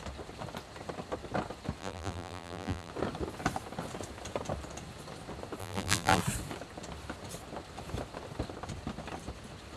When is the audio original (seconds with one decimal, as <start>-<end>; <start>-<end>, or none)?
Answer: 0.0-1.8; 2.9-5.6; 6.2-9.8